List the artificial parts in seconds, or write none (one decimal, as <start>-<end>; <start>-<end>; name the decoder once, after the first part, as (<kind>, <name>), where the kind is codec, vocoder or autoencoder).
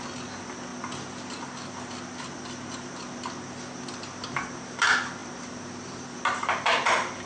none